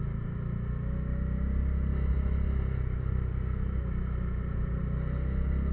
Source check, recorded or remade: recorded